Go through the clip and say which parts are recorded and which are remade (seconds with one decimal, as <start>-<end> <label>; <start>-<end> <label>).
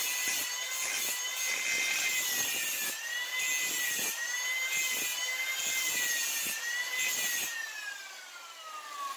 0.0-9.2 recorded